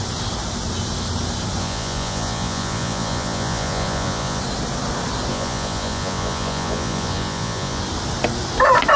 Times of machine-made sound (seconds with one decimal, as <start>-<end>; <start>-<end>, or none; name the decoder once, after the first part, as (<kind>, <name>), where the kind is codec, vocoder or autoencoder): 1.6-4.4 (vocoder, Vocos); 5.3-7.8